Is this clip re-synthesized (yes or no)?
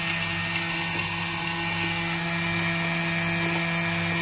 no